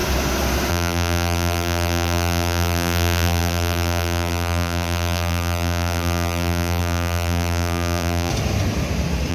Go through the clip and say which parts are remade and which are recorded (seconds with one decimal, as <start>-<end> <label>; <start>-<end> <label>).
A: 0.0-0.7 recorded; 0.7-8.3 remade; 8.3-9.3 recorded